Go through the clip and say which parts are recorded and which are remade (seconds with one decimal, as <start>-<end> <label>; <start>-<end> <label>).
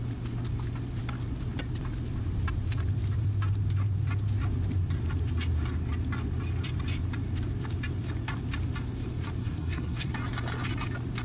0.0-9.4 recorded; 9.4-10.1 remade; 10.1-11.2 recorded